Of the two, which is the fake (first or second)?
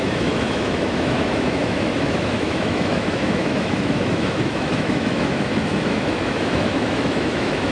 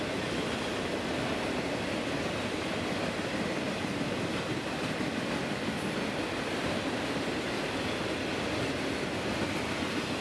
first